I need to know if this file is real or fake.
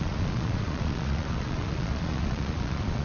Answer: fake